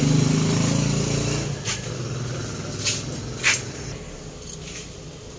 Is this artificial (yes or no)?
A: no